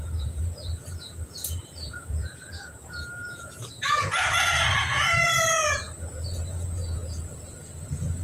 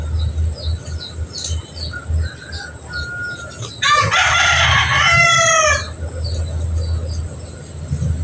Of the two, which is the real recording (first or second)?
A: second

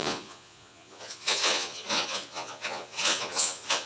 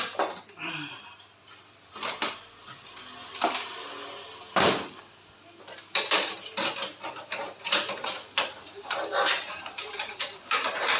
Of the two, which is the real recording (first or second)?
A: second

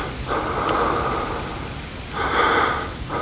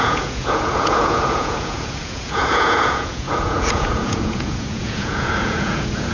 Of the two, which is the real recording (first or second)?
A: first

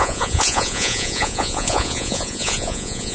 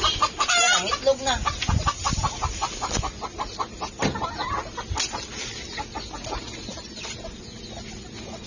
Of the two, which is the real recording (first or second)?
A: second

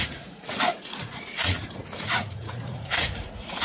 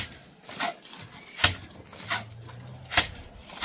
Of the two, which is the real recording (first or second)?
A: second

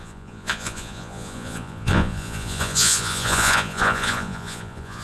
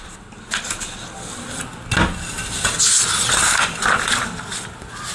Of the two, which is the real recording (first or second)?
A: second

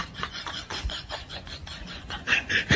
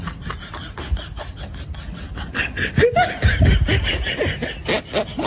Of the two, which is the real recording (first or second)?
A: second